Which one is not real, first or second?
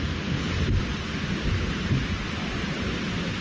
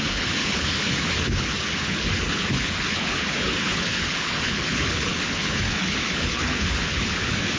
second